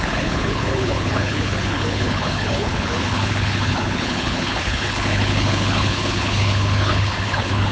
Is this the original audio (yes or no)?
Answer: no